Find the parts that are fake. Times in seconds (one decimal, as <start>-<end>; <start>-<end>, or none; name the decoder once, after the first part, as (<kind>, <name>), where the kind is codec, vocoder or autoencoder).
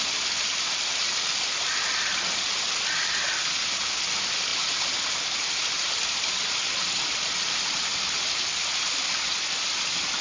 none